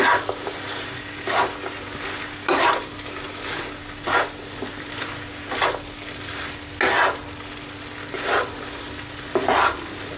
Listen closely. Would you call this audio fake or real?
real